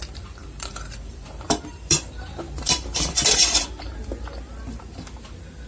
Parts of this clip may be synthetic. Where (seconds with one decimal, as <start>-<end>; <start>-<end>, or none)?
0.4-3.8

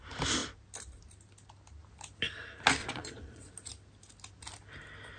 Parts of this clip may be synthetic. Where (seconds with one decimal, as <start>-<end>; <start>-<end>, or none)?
2.8-3.5

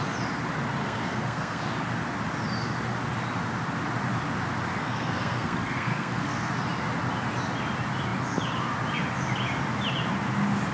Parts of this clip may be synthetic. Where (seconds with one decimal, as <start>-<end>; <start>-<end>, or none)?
0.8-1.6; 4.8-6.5